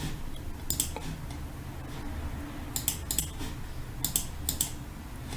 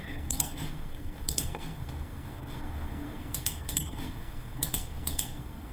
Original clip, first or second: first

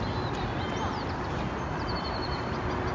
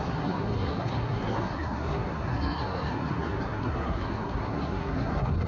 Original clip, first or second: first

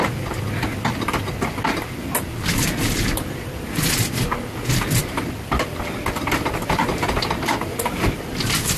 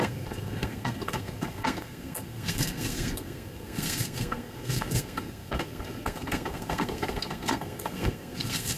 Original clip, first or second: first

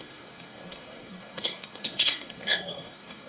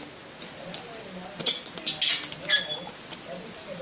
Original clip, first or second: second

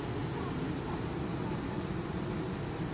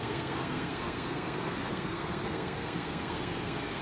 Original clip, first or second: first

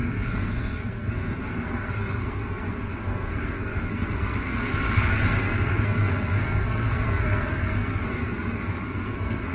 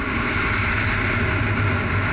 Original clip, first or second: second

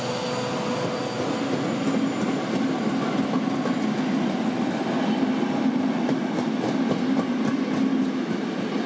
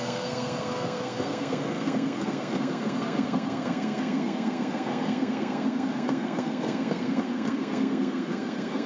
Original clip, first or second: first